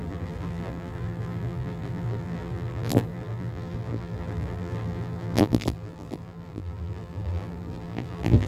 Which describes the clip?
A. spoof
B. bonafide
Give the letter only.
A